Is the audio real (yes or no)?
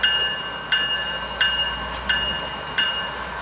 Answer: yes